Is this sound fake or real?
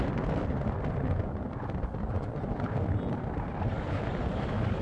real